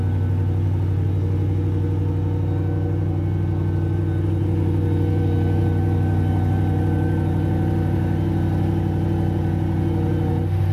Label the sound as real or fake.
real